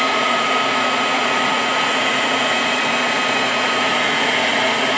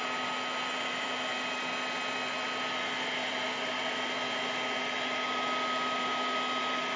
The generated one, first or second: first